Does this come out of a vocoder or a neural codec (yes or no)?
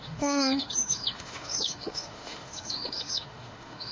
yes